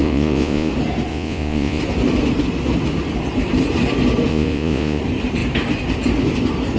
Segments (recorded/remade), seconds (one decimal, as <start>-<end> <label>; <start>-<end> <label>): 0.0-0.7 remade; 0.7-1.1 recorded; 1.1-1.8 remade; 1.8-4.3 recorded; 4.3-5.0 remade; 5.0-6.8 recorded